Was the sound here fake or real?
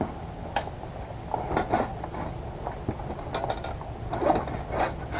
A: real